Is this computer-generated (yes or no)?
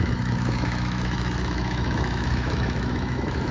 yes